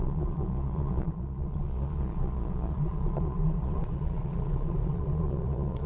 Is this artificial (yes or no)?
yes